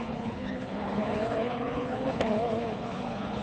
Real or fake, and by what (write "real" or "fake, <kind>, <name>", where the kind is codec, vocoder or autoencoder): fake, codec, HILCodec